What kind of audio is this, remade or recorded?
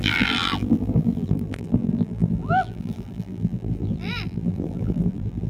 remade